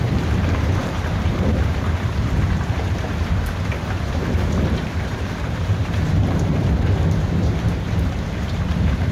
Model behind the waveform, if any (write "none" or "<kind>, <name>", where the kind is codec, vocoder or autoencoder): vocoder, BigVGAN v2